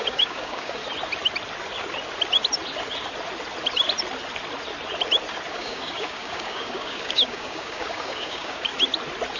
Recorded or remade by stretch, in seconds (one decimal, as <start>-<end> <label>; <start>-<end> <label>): 0.0-0.8 remade; 0.8-5.5 recorded; 5.5-8.7 remade; 8.7-9.4 recorded